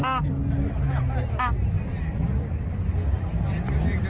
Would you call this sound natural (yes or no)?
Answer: yes